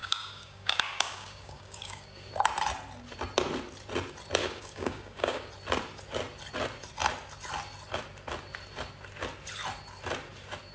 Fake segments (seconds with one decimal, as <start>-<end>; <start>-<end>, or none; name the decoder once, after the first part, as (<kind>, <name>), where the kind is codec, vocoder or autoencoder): 0.0-2.3 (codec, DAC); 4.4-5.5